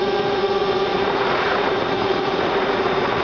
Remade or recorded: remade